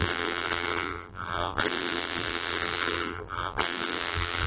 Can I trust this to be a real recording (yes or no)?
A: no